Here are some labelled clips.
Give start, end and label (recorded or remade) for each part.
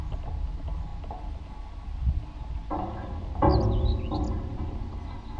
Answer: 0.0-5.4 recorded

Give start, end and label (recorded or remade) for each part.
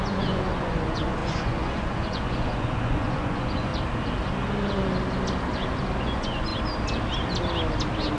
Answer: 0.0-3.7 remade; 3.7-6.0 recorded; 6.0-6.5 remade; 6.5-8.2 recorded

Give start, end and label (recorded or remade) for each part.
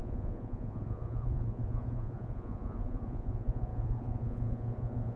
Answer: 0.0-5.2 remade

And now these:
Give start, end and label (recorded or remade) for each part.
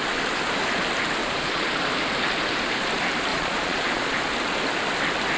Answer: 0.0-1.2 recorded; 1.2-1.7 remade; 1.7-3.3 recorded; 3.3-4.2 remade; 4.2-5.4 recorded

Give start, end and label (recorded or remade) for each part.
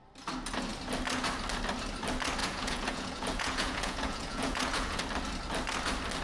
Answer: 0.0-2.4 recorded; 2.4-5.0 remade; 5.0-6.2 recorded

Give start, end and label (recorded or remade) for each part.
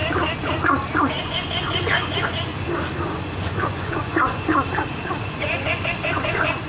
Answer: 0.0-1.2 recorded; 1.2-2.5 remade; 2.5-3.1 recorded; 3.1-4.5 remade; 4.5-5.2 recorded; 5.2-6.7 remade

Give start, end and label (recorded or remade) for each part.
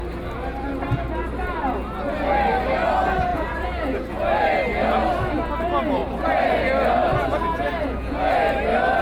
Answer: 0.0-3.3 recorded; 3.3-4.1 remade; 4.1-7.3 recorded; 7.3-8.3 remade; 8.3-9.0 recorded